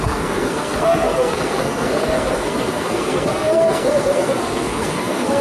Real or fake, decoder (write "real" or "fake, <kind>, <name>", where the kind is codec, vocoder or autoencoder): fake, codec, SNAC